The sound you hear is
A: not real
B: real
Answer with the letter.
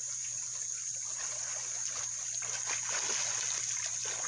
B